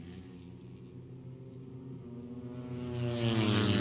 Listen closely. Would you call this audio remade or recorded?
recorded